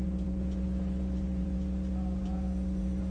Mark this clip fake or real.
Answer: fake